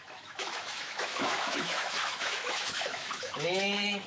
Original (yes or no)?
no